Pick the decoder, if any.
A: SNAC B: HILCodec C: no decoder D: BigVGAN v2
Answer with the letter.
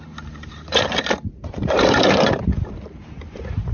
D